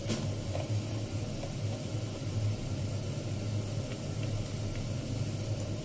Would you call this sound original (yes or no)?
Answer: yes